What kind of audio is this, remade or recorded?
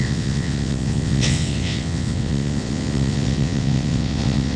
remade